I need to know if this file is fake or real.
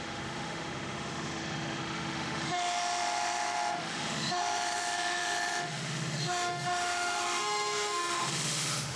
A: fake